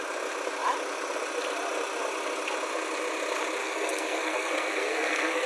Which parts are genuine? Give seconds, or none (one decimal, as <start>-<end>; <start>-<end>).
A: 0.0-3.6